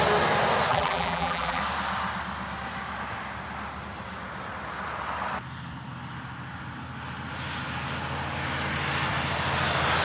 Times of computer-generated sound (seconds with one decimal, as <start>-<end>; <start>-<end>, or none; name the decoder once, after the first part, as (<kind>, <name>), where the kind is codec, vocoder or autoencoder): 0.7-1.6 (vocoder, BigVGAN v2)